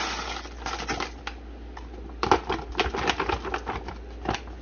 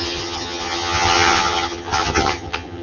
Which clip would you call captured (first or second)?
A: first